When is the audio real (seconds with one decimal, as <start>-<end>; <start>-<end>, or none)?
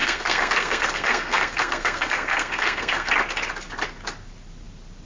3.1-5.1